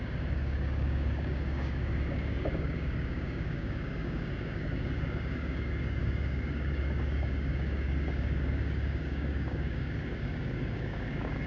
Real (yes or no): no